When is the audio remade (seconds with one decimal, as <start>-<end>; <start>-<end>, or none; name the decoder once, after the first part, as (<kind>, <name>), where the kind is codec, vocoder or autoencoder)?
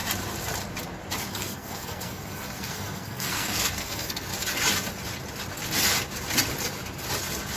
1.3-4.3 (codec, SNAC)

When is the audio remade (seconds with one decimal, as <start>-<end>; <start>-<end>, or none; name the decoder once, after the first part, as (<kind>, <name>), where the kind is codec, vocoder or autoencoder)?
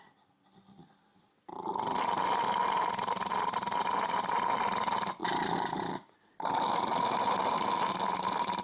none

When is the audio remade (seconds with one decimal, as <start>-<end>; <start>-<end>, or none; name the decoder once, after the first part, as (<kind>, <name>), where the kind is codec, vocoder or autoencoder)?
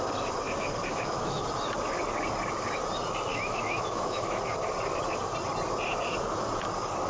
0.9-1.4 (autoencoder, DAC-VAE); 3.3-4.4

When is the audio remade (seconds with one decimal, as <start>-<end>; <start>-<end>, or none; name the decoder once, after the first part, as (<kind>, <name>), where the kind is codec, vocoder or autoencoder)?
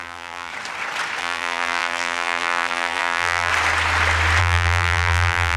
0.0-0.5 (vocoder, BigVGAN v2); 1.2-3.5; 4.4-5.6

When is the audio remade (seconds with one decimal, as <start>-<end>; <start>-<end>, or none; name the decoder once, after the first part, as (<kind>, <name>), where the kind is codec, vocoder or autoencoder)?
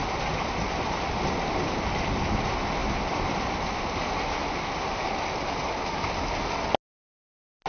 none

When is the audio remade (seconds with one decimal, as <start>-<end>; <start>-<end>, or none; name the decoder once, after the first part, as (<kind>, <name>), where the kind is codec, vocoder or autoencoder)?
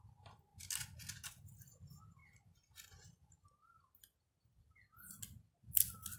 none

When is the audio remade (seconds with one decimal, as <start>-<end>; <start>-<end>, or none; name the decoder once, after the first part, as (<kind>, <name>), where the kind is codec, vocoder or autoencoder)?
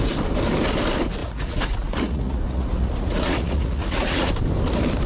1.2-4.3 (vocoder, Vocos)